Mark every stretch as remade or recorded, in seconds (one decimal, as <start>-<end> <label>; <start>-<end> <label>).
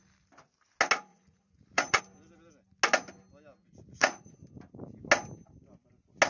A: 0.0-1.1 recorded; 1.1-2.0 remade; 2.0-3.6 recorded; 3.6-4.4 remade; 4.4-6.3 recorded